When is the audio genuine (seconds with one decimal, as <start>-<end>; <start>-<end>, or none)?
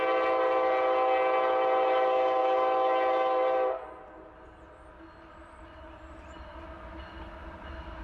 0.0-8.0